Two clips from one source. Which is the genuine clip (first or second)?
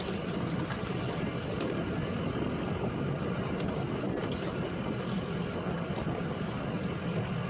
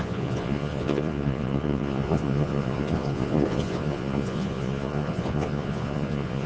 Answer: first